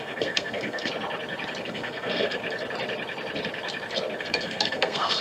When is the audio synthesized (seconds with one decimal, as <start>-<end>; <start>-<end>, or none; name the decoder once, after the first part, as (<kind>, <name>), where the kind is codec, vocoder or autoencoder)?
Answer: 0.0-0.9 (codec, SNAC); 1.6-2.4; 4.2-5.2